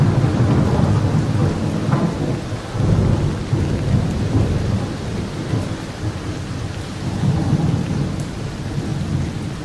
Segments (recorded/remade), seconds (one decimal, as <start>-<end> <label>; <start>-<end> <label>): 0.0-1.4 remade; 1.4-5.4 recorded; 5.4-8.9 remade; 8.9-9.6 recorded